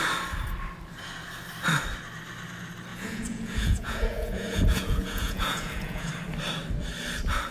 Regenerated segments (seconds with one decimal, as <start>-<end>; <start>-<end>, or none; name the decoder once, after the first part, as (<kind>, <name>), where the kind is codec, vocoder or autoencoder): 2.9-6.1 (vocoder, Vocos)